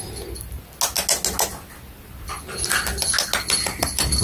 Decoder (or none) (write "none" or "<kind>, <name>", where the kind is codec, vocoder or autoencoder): none